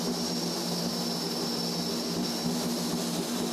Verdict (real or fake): real